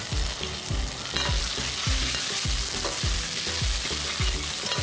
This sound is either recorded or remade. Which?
recorded